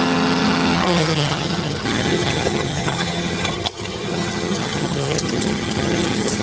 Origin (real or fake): fake